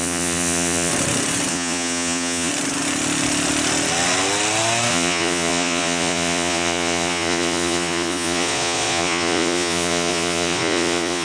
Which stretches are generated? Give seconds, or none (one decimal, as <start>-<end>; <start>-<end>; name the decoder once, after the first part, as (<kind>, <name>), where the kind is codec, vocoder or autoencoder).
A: 0.0-0.9 (vocoder, Vocos); 1.5-2.5; 4.9-11.2